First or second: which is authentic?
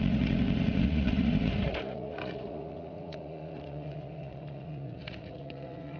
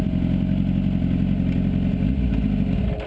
second